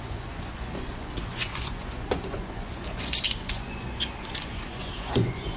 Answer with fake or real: fake